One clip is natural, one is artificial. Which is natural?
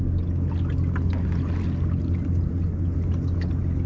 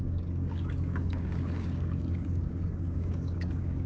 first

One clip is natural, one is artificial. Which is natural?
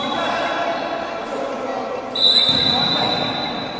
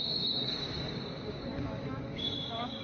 first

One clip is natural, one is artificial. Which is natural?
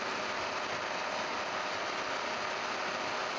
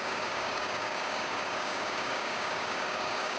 first